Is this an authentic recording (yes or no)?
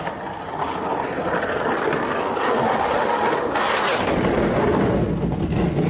yes